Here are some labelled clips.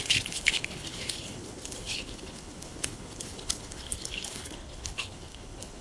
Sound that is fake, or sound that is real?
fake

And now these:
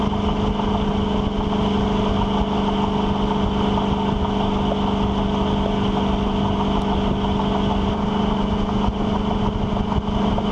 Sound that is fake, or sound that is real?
real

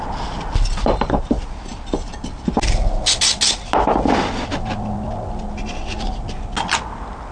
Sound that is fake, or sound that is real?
real